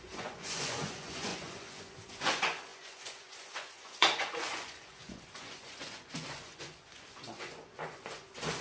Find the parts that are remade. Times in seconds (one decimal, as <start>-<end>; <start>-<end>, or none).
0.0-8.6